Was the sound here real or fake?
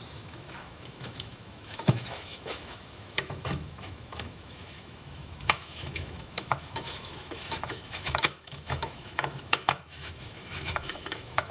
fake